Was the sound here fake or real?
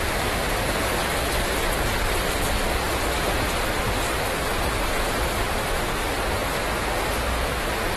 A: fake